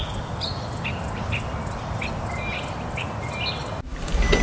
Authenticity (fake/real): real